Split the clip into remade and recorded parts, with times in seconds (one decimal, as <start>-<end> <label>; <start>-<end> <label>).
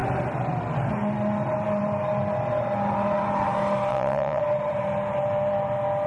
0.0-3.9 recorded; 3.9-4.4 remade; 4.4-6.1 recorded